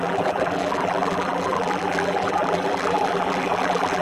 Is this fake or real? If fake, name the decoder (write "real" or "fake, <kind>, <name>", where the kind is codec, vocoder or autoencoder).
fake, vocoder, BigVGAN v2